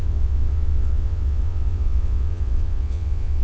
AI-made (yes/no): yes